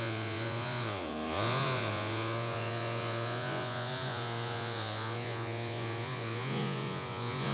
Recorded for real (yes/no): no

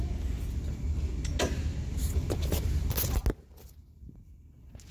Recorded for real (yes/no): yes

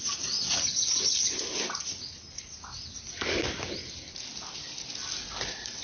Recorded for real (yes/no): yes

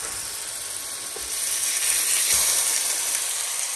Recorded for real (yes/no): yes